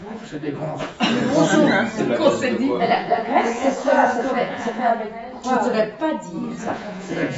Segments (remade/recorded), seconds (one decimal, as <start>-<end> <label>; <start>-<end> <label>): 0.0-0.9 remade; 0.9-2.8 recorded; 2.8-4.9 remade; 4.9-6.6 recorded; 6.6-7.4 remade